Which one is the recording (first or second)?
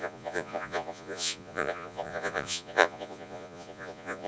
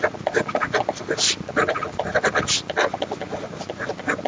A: second